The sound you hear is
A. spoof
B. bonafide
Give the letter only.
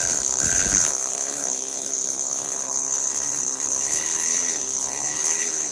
A